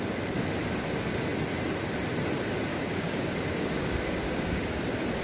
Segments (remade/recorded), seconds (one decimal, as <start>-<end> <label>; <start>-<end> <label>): 0.0-2.7 recorded; 2.7-4.8 remade; 4.8-5.2 recorded